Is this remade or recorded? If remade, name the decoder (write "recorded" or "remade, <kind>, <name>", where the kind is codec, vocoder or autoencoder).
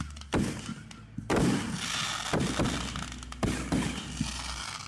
recorded